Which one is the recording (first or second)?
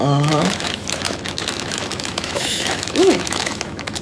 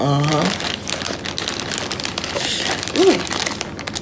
second